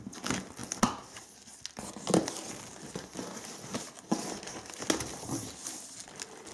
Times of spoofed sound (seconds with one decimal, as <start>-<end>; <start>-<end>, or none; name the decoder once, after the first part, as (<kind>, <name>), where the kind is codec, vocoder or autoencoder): none